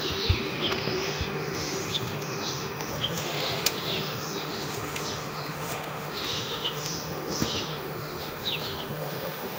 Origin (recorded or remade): remade